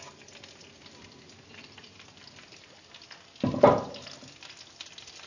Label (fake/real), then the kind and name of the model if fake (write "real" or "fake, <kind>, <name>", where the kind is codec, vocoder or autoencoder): real